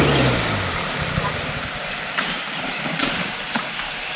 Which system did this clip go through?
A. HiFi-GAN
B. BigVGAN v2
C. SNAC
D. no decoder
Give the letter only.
D